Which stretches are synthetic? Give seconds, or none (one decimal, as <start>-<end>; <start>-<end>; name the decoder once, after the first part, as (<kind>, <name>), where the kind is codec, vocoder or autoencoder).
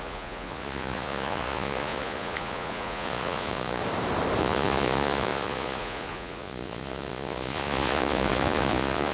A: 0.0-3.8 (vocoder, Vocos); 4.4-9.1